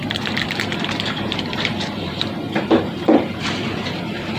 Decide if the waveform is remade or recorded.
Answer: remade